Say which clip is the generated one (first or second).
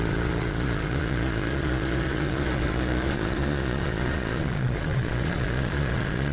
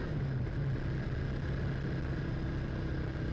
first